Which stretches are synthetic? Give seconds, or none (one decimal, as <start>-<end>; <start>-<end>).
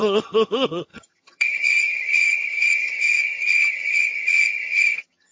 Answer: 0.0-5.3